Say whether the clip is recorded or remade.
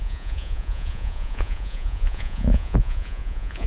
remade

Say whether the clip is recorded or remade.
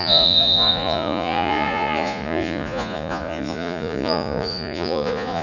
remade